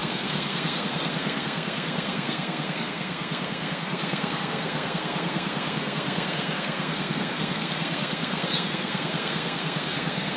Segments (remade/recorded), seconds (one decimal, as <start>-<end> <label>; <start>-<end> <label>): 0.0-10.4 remade